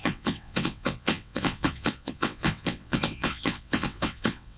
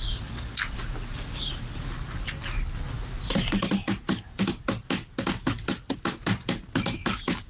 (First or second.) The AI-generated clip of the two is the first